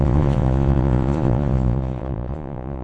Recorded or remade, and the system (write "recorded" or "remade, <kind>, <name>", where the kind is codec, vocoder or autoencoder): remade, vocoder, Vocos